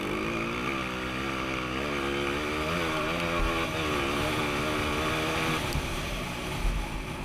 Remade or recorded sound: recorded